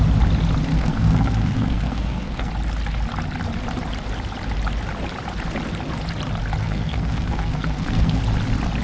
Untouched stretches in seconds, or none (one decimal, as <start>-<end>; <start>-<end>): 0.0-0.7; 2.5-6.6; 8.2-8.8